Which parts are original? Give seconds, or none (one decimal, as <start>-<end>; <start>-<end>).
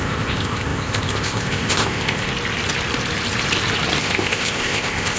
2.3-4.0